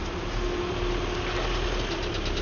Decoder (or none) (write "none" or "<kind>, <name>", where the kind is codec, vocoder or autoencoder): none